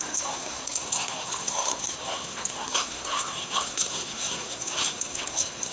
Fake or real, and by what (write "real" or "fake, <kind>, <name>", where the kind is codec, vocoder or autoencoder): fake, codec, SNAC